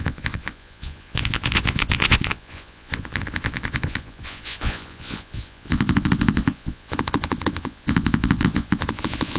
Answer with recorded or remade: remade